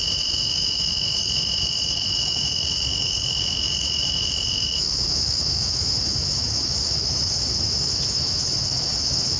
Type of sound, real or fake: fake